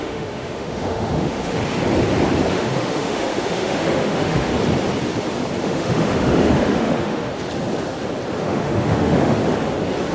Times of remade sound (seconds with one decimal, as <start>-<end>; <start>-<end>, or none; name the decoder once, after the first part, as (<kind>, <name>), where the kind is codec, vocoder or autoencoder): 0.0-1.6 (autoencoder, DAC-VAE); 2.5-4.5; 5.6-7.3; 8.4-9.4